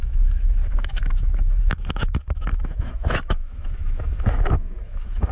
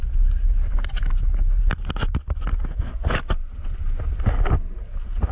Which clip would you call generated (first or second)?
first